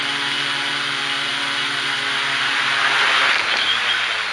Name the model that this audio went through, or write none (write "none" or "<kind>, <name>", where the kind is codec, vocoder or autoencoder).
none